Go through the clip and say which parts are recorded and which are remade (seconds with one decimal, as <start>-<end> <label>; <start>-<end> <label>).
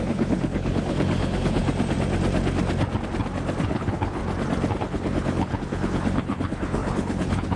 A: 0.0-1.6 remade; 1.6-3.6 recorded; 3.6-4.2 remade; 4.2-4.8 recorded; 4.8-7.6 remade